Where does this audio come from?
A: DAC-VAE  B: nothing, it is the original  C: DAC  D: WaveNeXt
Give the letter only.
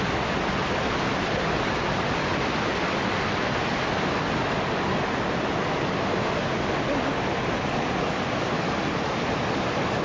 B